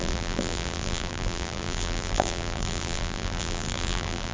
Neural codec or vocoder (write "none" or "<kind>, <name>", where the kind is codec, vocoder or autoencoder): vocoder, BigVGAN v2